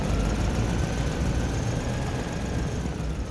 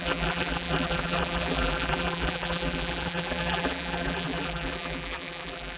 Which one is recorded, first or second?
first